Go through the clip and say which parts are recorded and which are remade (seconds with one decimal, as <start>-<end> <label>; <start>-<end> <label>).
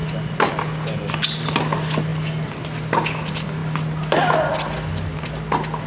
0.0-5.9 recorded